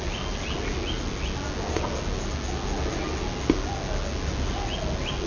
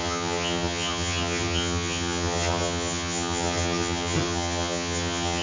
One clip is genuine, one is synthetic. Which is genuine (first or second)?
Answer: first